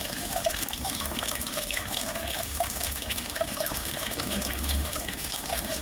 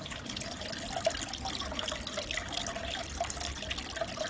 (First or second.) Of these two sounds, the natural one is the second